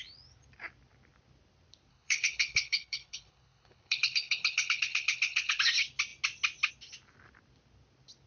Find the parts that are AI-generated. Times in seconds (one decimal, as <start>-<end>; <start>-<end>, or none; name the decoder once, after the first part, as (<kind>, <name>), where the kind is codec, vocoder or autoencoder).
1.9-5.6 (codec, HILCodec)